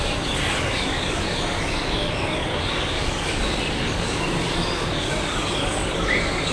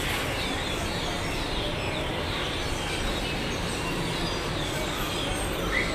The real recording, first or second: second